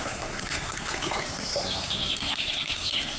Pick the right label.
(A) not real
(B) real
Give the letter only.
A